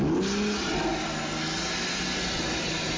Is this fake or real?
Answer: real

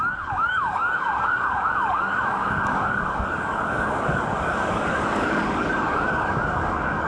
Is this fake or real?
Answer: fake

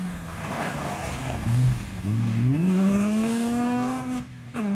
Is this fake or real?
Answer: fake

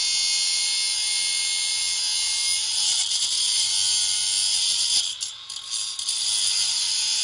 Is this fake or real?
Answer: real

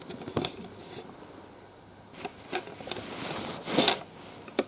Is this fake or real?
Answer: real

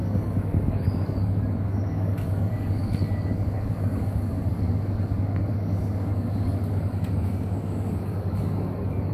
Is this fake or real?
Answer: fake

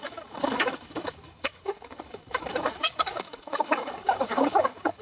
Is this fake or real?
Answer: fake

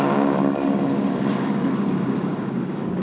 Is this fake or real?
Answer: fake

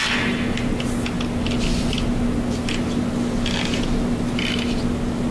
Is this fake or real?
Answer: real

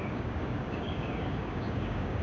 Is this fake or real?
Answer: fake